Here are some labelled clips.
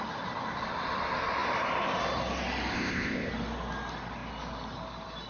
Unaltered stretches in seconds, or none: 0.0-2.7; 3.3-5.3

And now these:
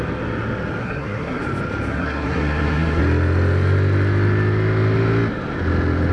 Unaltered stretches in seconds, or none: 0.0-0.8; 1.4-1.9; 3.0-6.1

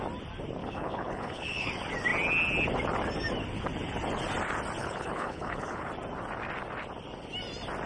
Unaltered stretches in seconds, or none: 0.0-0.6; 1.7-4.8; 5.9-7.9

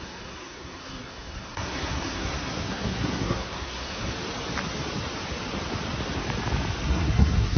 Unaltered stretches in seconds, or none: 4.1-6.8